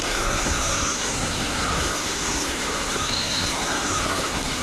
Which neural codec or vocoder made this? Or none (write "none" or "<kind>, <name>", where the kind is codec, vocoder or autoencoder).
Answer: codec, SNAC